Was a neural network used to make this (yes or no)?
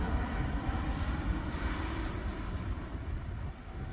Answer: no